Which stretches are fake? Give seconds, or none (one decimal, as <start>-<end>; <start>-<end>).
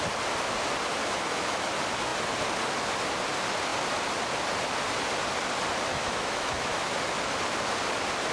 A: 1.0-1.7; 5.9-6.9